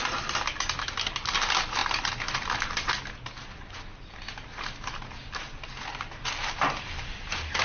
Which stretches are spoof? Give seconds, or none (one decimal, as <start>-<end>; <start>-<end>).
none